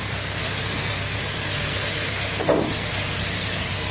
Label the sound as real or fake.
fake